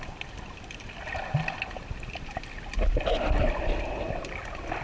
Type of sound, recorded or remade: recorded